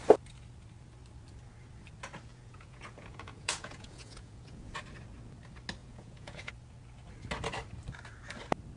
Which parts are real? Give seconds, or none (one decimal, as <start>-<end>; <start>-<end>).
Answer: 0.0-2.3; 4.7-5.8; 6.5-8.8